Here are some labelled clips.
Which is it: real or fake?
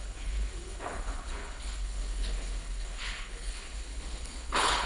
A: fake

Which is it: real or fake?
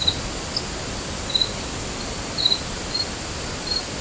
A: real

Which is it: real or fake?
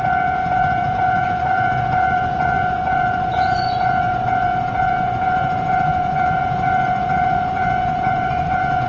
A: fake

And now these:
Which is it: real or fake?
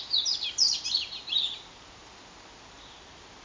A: real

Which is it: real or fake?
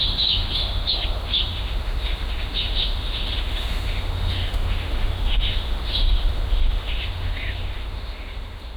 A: fake